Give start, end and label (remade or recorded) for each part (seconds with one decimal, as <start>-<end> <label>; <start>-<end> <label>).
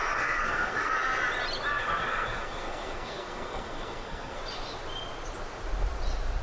0.0-0.9 remade; 0.9-1.7 recorded; 1.7-4.4 remade; 4.4-6.4 recorded